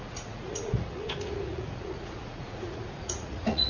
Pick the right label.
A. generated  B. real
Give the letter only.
A